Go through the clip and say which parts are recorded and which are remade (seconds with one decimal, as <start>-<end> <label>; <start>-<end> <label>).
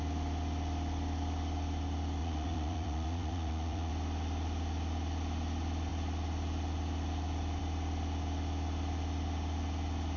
0.0-2.2 recorded; 2.2-3.9 remade; 3.9-10.2 recorded